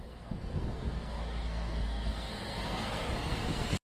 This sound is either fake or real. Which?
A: fake